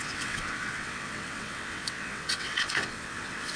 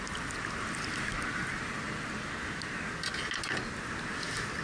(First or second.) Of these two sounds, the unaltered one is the second